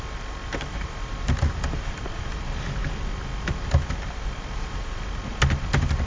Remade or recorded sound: recorded